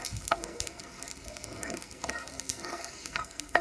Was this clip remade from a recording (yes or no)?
yes